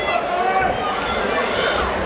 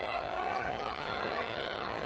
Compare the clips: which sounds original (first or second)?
first